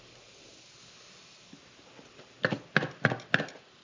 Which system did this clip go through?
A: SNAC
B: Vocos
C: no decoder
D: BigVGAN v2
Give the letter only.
C